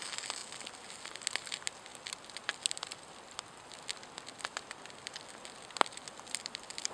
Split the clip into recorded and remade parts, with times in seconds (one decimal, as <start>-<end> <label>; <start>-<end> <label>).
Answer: 0.0-6.9 recorded